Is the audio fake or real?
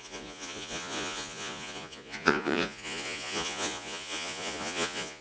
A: fake